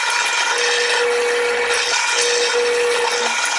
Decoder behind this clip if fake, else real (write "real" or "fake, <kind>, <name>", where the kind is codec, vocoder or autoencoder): real